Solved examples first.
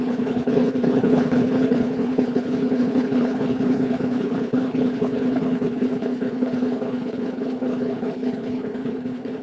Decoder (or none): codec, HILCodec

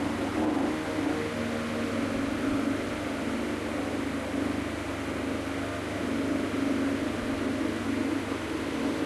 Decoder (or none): none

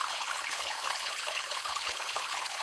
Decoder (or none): codec, HILCodec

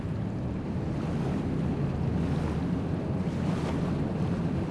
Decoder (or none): none